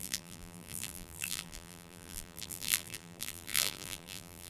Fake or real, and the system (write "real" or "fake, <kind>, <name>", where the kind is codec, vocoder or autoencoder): fake, vocoder, BigVGAN v2